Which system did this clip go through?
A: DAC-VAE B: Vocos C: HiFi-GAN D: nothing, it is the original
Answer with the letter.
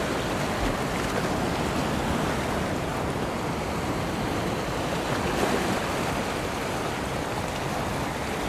D